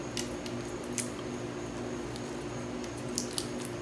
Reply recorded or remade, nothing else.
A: recorded